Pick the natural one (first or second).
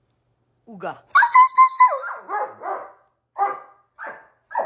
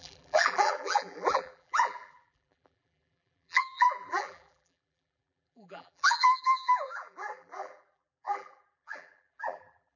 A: first